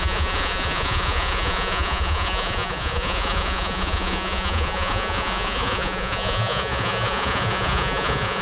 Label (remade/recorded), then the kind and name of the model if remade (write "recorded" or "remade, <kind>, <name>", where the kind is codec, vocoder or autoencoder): remade, vocoder, Vocos